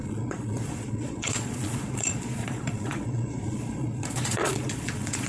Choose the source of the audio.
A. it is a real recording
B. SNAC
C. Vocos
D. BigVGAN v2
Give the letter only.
C